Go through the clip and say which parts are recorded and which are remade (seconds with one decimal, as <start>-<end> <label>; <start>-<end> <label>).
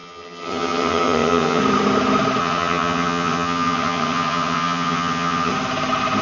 0.0-1.6 remade; 1.6-2.4 recorded; 2.4-5.5 remade; 5.5-6.2 recorded